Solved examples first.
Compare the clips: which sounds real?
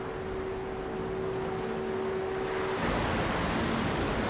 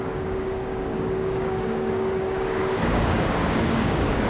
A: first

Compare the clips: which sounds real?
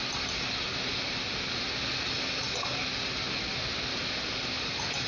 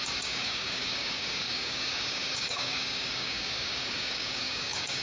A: first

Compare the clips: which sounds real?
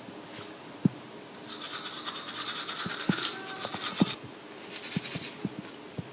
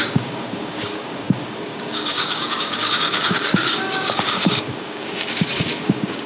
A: first